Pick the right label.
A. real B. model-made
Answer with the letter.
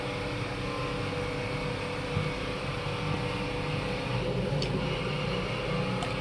A